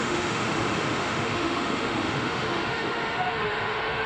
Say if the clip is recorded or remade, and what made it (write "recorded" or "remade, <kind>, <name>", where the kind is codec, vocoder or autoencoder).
remade, autoencoder, DAC-VAE